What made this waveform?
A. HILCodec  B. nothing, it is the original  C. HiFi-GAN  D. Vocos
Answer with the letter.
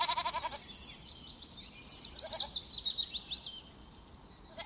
B